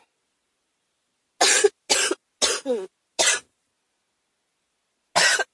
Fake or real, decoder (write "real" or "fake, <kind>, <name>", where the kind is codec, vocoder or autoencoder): real